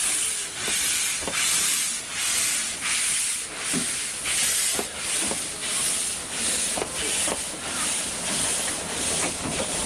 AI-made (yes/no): no